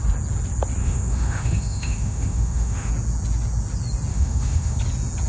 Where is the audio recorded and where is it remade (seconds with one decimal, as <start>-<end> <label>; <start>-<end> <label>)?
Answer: 0.0-0.8 recorded; 0.8-2.9 remade; 2.9-4.1 recorded; 4.1-4.8 remade; 4.8-5.3 recorded